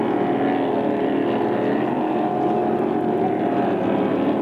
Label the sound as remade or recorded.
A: recorded